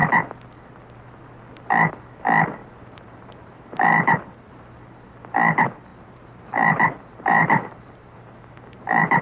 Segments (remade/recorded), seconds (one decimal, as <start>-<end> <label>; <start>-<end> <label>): 0.0-2.6 recorded; 2.6-4.6 remade; 4.6-5.9 recorded; 5.9-9.2 remade